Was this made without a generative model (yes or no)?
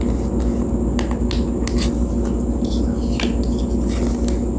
yes